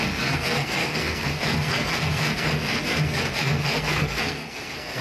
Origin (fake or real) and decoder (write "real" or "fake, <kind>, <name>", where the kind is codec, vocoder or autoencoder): fake, codec, SNAC